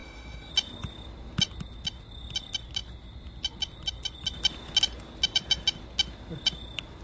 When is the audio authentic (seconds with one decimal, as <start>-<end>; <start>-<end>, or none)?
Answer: 0.5-7.0